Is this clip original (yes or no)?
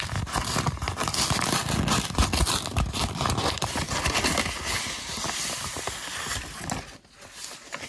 yes